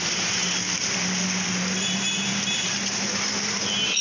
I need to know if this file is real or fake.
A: real